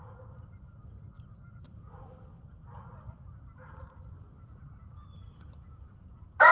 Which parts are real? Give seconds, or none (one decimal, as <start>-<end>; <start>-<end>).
0.0-6.5